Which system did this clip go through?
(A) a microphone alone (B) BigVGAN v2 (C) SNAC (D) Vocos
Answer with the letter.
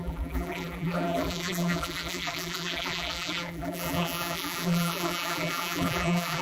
B